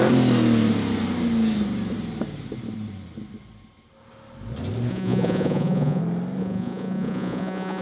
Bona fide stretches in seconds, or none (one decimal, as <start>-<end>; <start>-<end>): 0.0-4.9; 6.0-6.4